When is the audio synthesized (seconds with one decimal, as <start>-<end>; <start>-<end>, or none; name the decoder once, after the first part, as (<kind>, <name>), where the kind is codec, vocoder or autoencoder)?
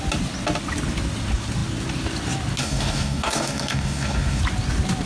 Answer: 2.6-4.4 (codec, DAC)